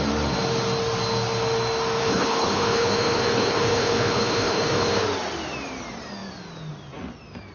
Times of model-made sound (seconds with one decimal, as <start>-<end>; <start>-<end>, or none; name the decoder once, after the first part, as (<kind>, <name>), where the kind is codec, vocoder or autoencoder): 2.0-4.9 (codec, HILCodec)